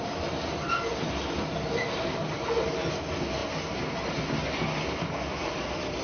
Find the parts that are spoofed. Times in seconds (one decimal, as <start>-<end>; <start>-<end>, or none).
none